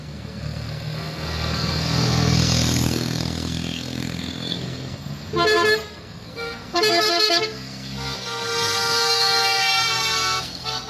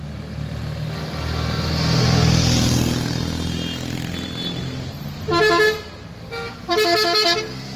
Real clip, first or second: second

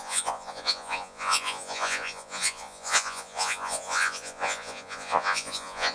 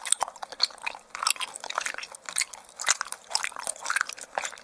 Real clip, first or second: second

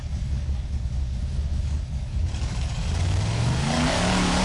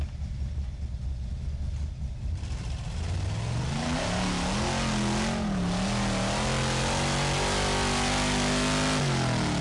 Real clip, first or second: second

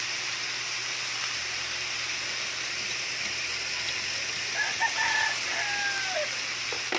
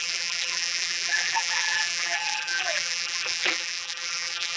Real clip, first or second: first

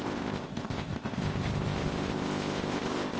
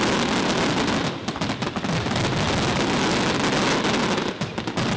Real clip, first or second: second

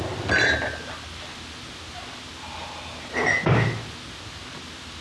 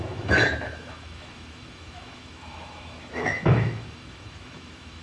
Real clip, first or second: first